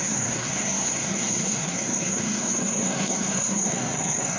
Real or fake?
fake